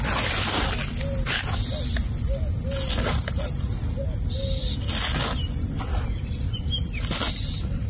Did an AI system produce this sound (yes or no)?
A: no